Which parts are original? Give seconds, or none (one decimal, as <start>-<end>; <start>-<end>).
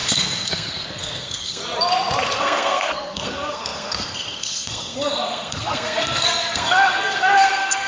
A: 1.6-2.4